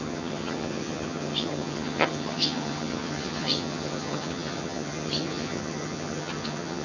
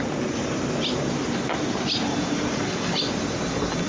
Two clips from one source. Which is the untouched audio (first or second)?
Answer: second